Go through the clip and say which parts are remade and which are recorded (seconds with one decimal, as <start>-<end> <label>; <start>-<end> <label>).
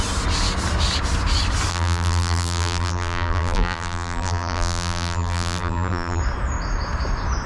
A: 0.0-1.7 recorded; 1.7-6.2 remade; 6.2-7.5 recorded